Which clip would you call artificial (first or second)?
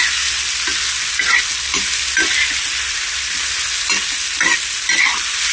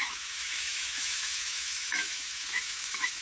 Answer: second